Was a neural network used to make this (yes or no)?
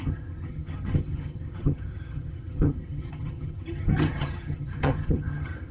yes